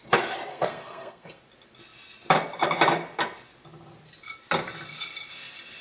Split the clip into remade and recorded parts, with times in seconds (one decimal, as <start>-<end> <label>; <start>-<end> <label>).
0.0-0.5 recorded; 0.5-1.4 remade; 1.4-5.8 recorded